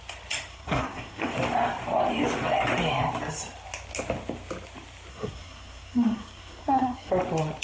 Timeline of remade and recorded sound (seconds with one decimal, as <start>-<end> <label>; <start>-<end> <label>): 0.0-0.5 recorded; 0.5-1.3 remade; 1.3-5.1 recorded; 5.1-7.1 remade; 7.1-7.6 recorded